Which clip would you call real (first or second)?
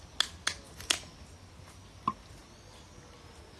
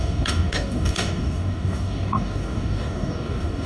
first